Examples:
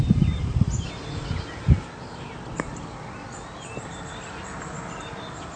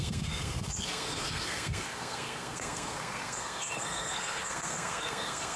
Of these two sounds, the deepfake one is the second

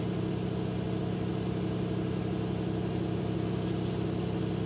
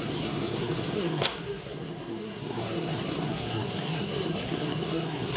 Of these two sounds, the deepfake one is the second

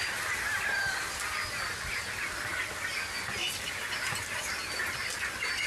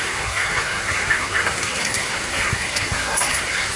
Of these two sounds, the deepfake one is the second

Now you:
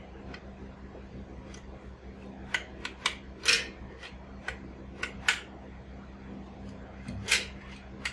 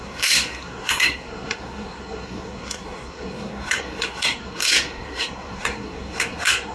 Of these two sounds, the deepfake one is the second